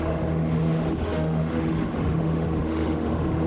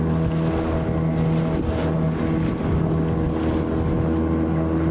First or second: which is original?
second